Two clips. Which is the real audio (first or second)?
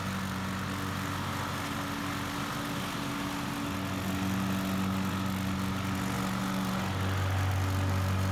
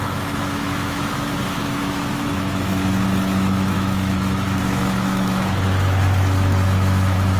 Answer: first